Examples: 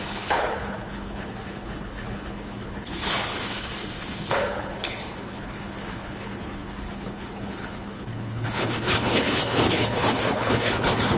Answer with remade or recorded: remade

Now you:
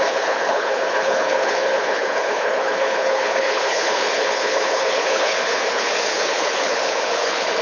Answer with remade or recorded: remade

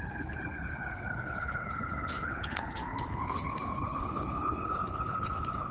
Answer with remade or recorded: remade